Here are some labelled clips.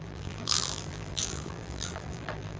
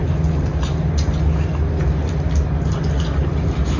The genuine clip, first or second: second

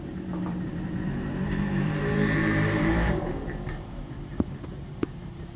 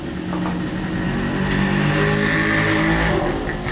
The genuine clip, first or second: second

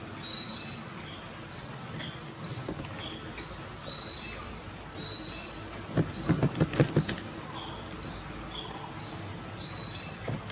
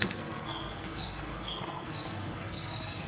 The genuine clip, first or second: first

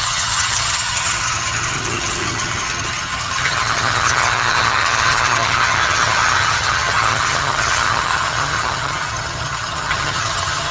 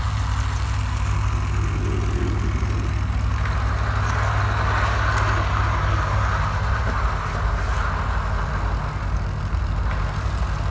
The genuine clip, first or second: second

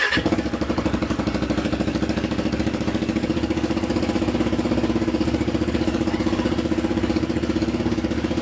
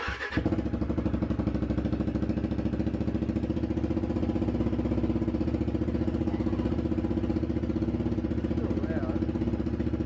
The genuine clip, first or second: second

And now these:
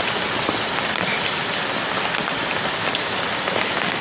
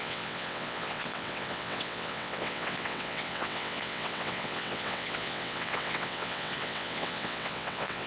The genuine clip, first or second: first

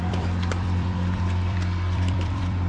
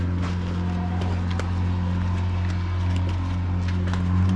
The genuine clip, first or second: second